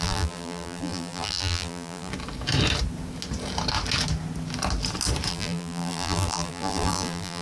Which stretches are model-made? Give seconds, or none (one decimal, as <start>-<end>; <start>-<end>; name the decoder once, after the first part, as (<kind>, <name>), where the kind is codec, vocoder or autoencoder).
0.0-2.1 (vocoder, BigVGAN v2); 5.3-7.4